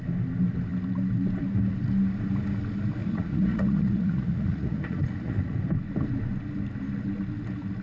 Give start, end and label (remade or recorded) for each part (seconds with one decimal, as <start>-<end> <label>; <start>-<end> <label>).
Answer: 0.0-3.0 recorded; 3.0-5.6 remade; 5.6-7.8 recorded